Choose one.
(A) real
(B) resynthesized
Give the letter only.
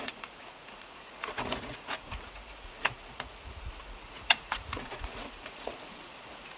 B